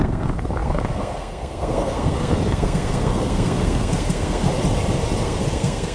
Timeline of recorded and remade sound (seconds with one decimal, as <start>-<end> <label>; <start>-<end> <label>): 0.0-4.5 remade; 4.5-5.2 recorded; 5.2-5.9 remade